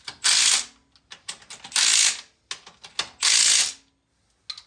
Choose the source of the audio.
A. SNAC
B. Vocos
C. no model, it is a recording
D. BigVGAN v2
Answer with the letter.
C